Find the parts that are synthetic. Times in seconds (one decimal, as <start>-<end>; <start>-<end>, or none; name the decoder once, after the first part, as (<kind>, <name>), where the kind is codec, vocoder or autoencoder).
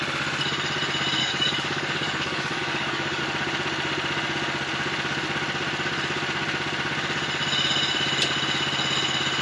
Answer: 1.2-3.2 (codec, DAC)